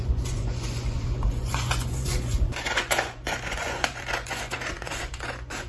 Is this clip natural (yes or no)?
no